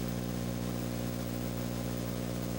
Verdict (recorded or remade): remade